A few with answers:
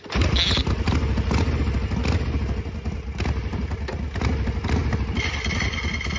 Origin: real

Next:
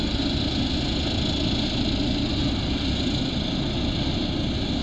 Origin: real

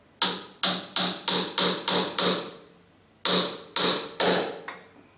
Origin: real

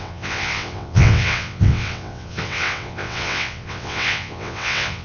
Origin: fake